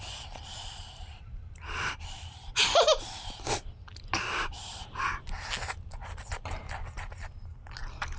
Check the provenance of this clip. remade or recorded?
recorded